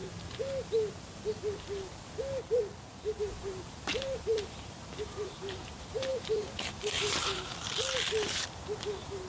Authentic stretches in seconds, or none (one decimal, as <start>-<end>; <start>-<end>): 0.0-3.2; 7.5-8.8